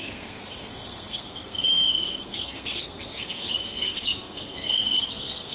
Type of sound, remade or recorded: remade